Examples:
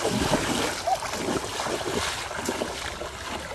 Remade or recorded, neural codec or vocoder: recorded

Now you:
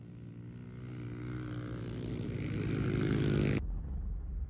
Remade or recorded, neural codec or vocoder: recorded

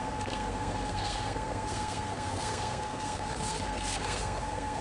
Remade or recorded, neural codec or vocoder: remade, codec, SNAC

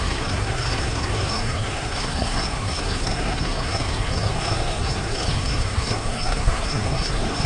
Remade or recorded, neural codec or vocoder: remade, codec, SNAC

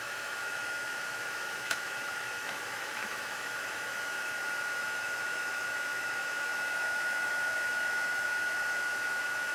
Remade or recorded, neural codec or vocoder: remade, autoencoder, DAC-VAE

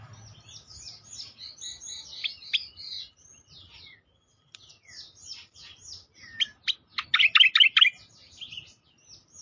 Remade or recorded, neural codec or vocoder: recorded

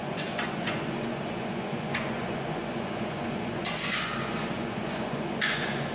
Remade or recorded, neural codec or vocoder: remade, vocoder, Vocos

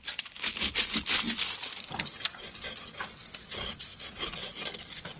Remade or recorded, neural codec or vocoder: recorded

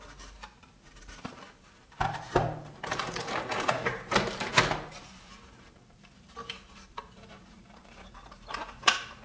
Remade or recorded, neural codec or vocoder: remade, vocoder, BigVGAN v2